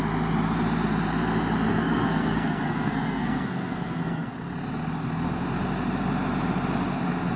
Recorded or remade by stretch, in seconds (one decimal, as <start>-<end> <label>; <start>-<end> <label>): 0.0-1.7 recorded; 1.7-4.3 remade; 4.3-7.4 recorded